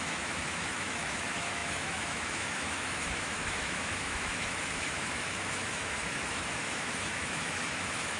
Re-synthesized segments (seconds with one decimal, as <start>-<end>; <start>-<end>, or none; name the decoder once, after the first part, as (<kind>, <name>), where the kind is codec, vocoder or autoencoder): 0.0-8.2 (autoencoder, DAC-VAE)